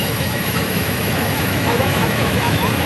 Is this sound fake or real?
fake